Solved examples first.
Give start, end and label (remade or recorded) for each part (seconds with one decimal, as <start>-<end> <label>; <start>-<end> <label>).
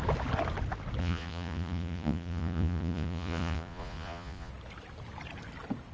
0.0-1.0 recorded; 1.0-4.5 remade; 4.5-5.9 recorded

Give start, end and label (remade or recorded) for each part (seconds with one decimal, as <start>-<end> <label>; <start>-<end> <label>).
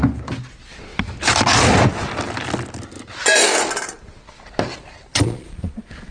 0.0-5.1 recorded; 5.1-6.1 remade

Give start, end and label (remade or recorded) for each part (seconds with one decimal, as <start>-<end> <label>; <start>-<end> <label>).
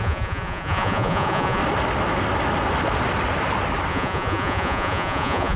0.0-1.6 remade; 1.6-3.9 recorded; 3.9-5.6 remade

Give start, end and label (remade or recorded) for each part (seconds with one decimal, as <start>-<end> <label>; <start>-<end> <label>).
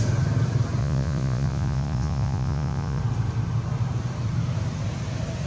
0.0-0.8 recorded; 0.8-3.0 remade; 3.0-5.5 recorded